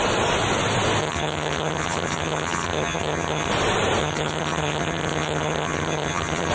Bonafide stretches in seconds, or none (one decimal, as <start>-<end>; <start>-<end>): 0.0-1.0; 3.5-4.0